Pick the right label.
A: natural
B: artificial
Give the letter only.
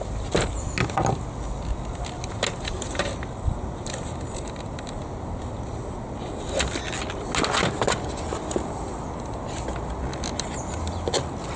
A